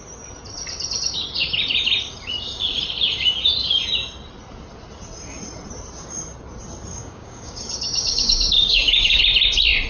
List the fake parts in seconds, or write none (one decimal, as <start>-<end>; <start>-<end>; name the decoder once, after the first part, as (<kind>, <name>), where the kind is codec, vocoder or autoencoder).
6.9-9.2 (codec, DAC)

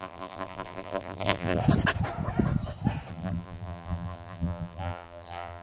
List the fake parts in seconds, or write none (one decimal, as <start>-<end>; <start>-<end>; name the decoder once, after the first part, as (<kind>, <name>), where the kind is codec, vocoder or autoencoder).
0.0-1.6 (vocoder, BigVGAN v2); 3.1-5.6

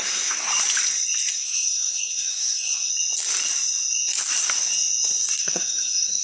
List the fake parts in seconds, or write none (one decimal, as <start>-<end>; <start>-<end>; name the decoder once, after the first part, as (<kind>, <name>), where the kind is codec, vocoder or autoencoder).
0.0-0.5 (codec, SNAC); 1.3-2.9; 5.4-6.2

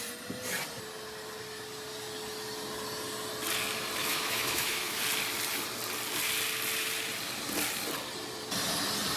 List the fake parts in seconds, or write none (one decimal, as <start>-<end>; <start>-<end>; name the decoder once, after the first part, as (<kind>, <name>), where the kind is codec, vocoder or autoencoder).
4.0-5.0 (autoencoder, DAC-VAE)

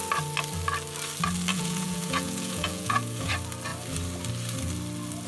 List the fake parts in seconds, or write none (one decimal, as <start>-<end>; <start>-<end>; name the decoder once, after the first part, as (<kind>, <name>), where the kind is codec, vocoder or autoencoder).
1.5-3.3 (vocoder, Vocos)